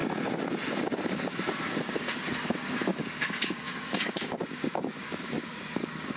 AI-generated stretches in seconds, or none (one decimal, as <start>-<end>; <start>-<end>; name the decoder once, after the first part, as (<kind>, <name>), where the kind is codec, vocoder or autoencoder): 1.1-6.2 (codec, DAC)